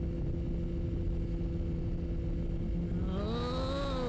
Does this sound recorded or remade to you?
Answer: recorded